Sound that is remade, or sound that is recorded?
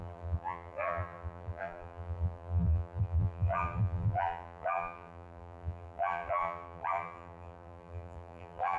remade